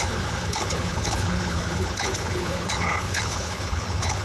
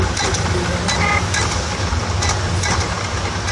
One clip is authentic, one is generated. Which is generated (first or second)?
first